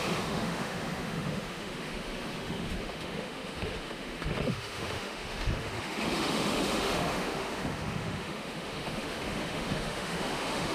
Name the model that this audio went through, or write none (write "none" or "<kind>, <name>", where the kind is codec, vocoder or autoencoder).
autoencoder, DAC-VAE